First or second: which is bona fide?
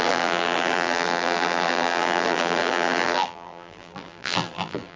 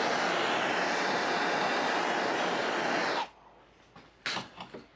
second